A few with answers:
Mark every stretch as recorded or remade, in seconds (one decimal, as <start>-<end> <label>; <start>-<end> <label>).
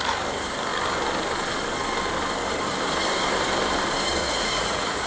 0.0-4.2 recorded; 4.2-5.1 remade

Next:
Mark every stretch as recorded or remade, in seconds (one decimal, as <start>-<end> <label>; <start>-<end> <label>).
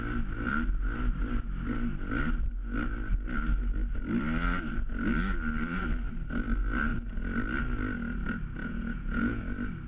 0.0-8.6 recorded; 8.6-9.4 remade; 9.4-9.9 recorded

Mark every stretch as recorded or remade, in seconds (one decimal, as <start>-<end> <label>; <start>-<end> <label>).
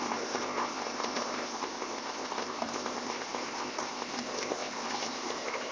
0.0-5.7 remade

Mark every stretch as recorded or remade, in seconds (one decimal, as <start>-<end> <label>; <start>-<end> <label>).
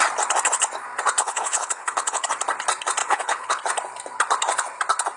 0.0-1.2 recorded; 1.2-2.3 remade; 2.3-3.0 recorded; 3.0-3.6 remade; 3.6-5.2 recorded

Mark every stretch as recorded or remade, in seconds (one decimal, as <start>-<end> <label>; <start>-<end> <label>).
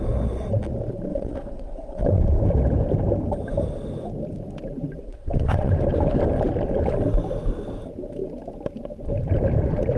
0.0-1.1 recorded; 1.1-2.2 remade; 2.2-5.0 recorded; 5.0-5.7 remade; 5.7-10.0 recorded